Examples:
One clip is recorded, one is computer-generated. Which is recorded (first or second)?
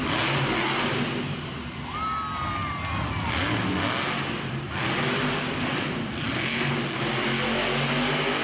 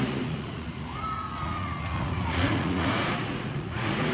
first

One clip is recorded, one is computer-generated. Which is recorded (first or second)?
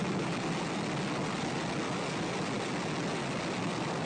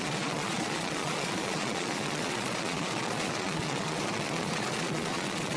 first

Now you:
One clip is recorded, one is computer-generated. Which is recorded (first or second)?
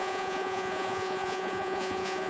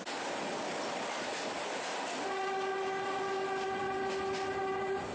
second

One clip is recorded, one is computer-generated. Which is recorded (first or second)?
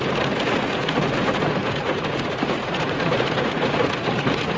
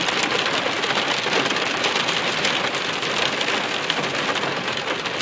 second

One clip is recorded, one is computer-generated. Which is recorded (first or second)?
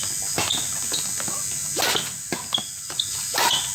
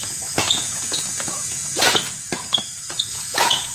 first